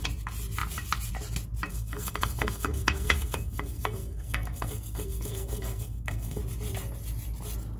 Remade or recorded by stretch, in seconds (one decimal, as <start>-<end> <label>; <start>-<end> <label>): 0.0-1.7 recorded; 1.7-6.4 remade; 6.4-7.8 recorded